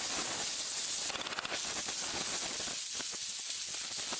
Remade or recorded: recorded